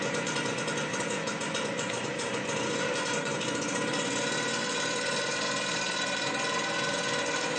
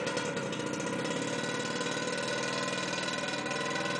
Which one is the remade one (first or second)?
first